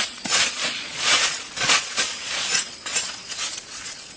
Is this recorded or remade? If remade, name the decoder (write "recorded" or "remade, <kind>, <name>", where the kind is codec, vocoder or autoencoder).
remade, vocoder, Vocos